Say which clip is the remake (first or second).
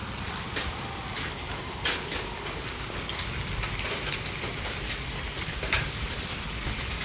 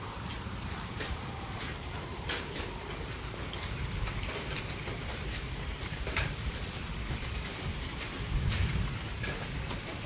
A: second